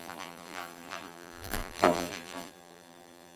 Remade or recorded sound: remade